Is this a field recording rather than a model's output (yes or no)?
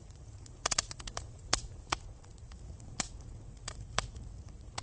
no